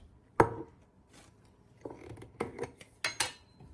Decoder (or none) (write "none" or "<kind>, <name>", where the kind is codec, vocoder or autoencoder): none